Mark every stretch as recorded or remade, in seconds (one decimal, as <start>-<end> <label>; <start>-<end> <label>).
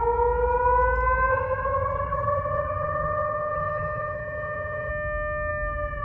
0.0-1.3 recorded; 1.3-4.9 remade; 4.9-6.0 recorded